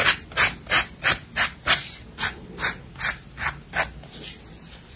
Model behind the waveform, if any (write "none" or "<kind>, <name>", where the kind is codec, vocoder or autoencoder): none